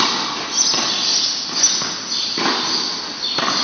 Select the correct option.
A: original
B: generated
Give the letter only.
A